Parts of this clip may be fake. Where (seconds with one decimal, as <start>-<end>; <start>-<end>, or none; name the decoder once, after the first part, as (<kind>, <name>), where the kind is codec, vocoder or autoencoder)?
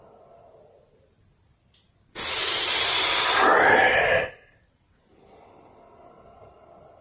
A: 2.4-6.4 (vocoder, BigVGAN v2)